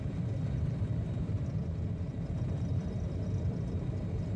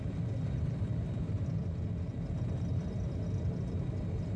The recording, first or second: second